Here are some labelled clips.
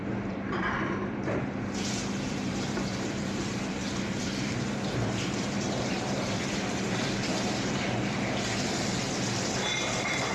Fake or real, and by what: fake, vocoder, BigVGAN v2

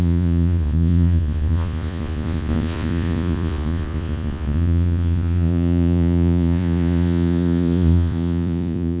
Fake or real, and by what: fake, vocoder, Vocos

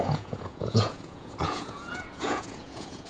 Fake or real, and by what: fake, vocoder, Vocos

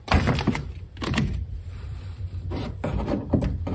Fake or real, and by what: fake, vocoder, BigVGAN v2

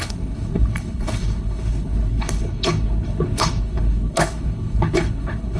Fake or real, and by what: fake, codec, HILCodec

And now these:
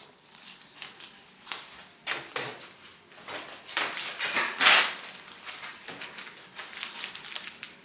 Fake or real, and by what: real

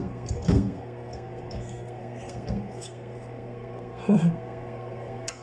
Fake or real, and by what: fake, codec, SNAC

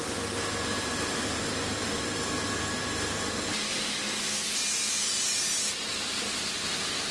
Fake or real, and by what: real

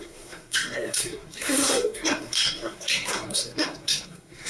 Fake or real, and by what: fake, codec, SNAC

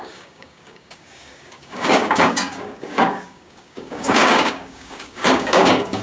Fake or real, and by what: fake, codec, DAC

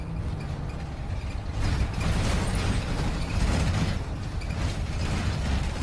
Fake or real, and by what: real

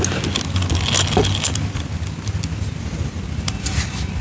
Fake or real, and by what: real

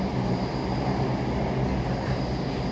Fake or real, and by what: real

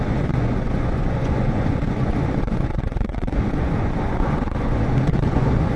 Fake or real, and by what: fake, vocoder, Vocos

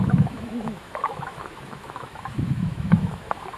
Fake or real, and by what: fake, autoencoder, DAC-VAE